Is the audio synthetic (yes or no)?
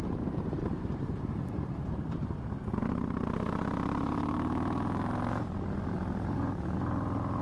yes